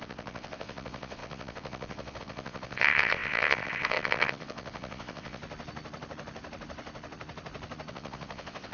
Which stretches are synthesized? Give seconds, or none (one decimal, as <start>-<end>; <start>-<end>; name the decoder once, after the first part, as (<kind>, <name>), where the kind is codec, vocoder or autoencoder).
0.0-5.4 (vocoder, WaveNeXt); 7.9-8.7